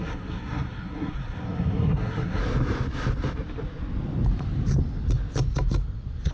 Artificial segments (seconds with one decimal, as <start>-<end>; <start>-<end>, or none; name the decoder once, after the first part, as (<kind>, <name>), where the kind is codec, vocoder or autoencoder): 0.0-2.4 (codec, SNAC)

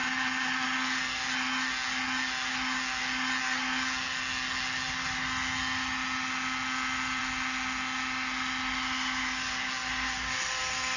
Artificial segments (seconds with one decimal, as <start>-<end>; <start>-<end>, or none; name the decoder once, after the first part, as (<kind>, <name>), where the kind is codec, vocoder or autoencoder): none

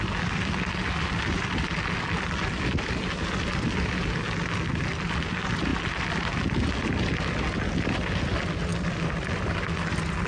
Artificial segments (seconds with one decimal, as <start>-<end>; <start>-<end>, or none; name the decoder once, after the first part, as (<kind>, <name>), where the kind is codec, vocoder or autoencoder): none

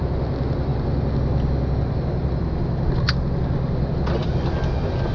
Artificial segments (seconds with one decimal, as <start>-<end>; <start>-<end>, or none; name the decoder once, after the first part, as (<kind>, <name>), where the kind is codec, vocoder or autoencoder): none

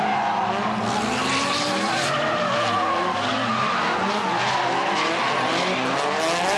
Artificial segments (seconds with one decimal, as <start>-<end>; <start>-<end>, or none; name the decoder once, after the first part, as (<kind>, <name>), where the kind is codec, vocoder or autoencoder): none

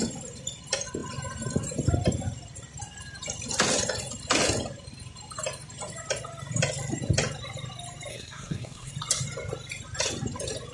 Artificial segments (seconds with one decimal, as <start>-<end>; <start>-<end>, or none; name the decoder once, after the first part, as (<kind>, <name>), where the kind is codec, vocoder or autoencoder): 8.1-8.9 (codec, SNAC)